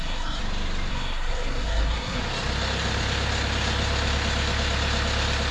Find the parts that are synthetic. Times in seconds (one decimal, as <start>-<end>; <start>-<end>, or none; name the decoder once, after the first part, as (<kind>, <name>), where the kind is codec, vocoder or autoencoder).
0.0-0.4 (codec, SNAC); 0.9-2.2